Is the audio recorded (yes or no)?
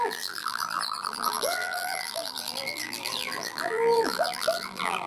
no